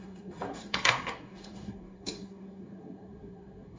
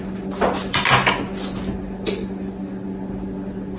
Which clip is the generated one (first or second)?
first